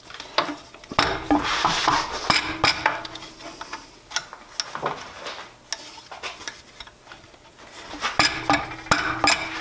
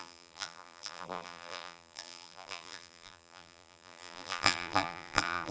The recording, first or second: first